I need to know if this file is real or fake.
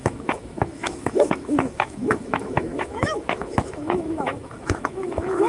fake